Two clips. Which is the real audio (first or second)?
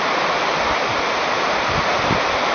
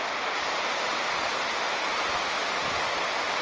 second